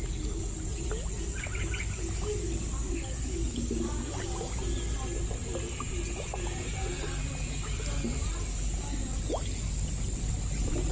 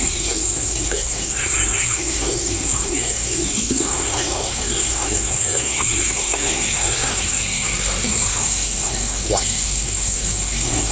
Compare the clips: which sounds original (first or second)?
first